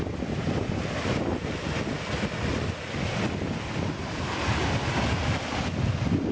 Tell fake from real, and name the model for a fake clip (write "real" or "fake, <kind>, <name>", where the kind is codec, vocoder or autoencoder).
real